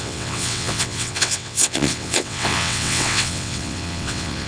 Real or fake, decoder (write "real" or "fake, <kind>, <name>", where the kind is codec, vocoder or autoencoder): fake, vocoder, WaveNeXt